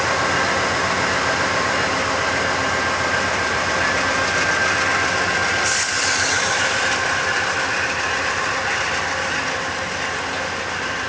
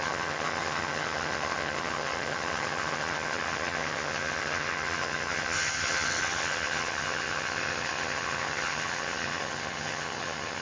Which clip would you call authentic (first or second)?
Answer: first